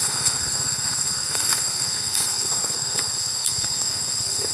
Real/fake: fake